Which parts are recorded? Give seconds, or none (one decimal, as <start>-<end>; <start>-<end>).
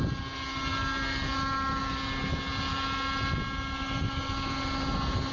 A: 0.0-5.3